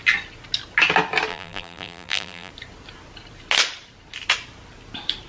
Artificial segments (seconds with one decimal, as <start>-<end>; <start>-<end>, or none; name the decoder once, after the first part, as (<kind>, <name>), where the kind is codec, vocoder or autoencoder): 1.3-2.5 (vocoder, BigVGAN v2)